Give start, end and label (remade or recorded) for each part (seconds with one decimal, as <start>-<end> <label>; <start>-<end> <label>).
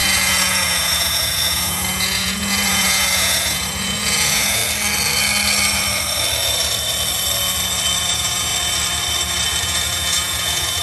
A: 0.0-4.6 remade; 4.6-8.0 recorded; 8.0-8.5 remade; 8.5-9.6 recorded; 9.6-10.8 remade